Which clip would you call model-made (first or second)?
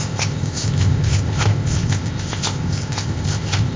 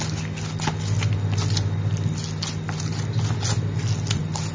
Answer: first